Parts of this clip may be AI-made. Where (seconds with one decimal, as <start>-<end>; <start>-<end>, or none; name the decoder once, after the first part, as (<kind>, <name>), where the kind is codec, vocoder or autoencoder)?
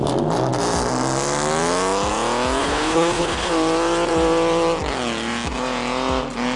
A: 2.6-3.5 (codec, HILCodec)